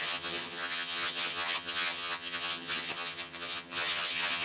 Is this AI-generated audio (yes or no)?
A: yes